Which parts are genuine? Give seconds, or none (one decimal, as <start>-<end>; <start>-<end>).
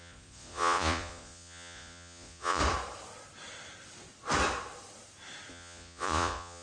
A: 2.6-5.5